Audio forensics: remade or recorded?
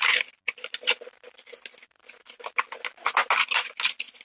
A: recorded